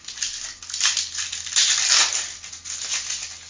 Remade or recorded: recorded